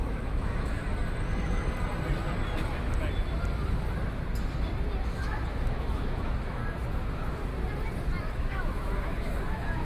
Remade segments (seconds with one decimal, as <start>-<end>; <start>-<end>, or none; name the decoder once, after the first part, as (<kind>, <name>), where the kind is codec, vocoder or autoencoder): 0.0-0.8 (autoencoder, DAC-VAE); 5.5-6.6; 7.1-7.5; 8.2-9.8